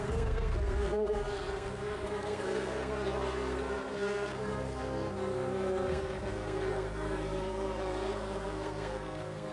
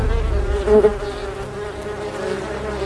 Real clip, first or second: second